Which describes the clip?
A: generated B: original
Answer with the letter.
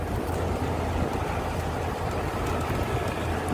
B